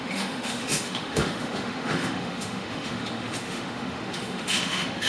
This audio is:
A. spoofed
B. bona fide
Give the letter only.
A